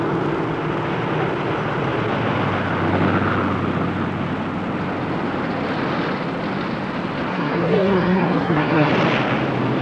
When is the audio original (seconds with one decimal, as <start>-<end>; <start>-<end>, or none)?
0.0-7.3; 8.9-9.8